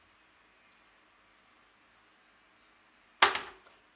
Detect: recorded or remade recorded